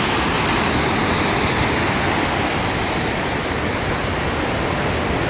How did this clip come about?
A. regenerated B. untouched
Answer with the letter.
B